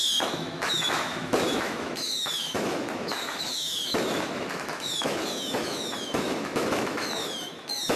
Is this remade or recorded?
remade